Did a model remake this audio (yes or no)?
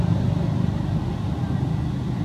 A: no